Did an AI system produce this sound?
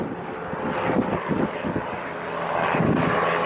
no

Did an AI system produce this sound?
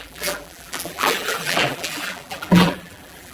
yes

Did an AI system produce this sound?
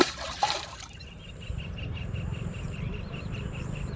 yes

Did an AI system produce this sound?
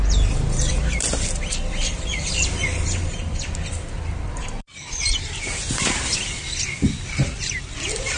yes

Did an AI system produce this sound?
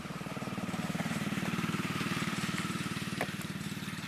yes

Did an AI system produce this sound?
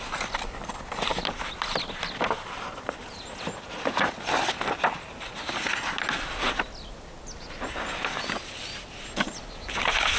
no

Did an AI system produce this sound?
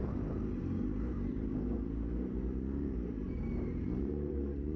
no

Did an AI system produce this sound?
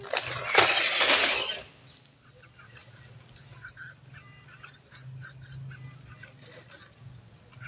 no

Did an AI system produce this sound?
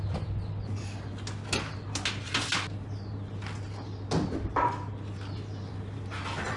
no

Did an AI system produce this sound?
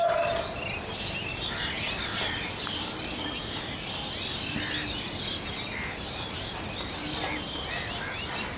no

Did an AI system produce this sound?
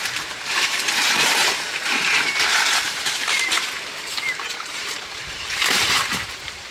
yes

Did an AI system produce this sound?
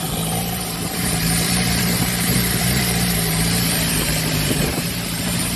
yes